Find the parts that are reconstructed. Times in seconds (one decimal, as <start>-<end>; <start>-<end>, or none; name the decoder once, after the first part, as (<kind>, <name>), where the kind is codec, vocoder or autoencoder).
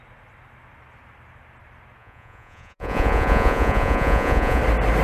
2.0-4.6 (vocoder, Vocos)